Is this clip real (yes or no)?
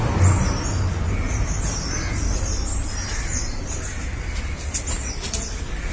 yes